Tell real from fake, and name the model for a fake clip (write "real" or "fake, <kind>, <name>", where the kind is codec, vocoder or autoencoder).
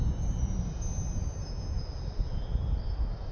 real